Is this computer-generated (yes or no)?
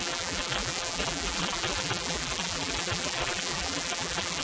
yes